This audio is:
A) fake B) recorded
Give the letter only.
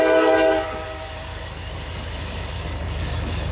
A